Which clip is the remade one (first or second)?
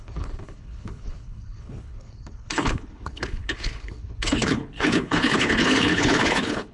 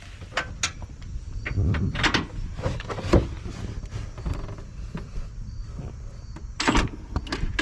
first